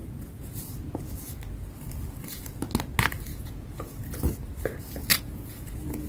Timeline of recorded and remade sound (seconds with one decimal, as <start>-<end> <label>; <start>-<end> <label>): 0.0-0.7 remade; 0.7-3.3 recorded; 3.3-4.2 remade; 4.2-5.1 recorded; 5.1-6.1 remade